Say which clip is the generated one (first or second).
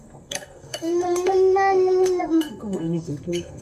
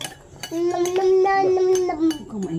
first